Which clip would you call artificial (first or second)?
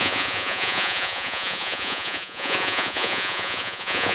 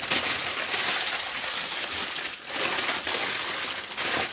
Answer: first